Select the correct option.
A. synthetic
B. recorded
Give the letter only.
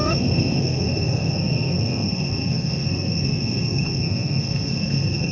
A